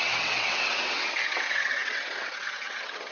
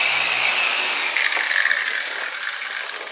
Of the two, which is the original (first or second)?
second